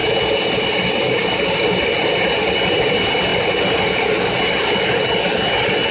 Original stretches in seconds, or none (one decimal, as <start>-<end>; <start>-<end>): 0.0-5.9